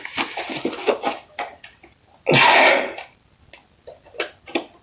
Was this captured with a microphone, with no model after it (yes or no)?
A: yes